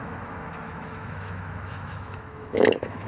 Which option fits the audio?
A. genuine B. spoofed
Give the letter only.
B